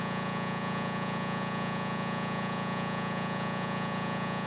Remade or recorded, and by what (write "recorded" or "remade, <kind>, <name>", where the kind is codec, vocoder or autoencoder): remade, vocoder, Vocos